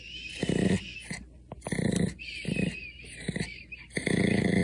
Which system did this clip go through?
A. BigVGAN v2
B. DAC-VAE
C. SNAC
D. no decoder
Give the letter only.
D